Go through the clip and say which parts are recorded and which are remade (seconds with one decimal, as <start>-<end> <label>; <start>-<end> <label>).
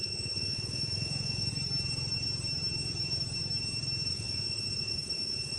0.0-1.5 remade; 1.5-4.1 recorded; 4.1-5.6 remade